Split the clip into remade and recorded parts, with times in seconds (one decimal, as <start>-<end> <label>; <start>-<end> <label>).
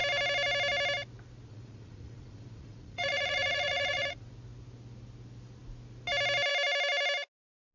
0.0-1.5 recorded; 1.5-4.3 remade; 4.3-7.7 recorded